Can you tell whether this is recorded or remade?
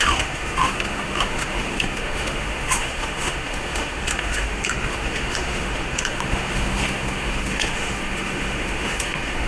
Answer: remade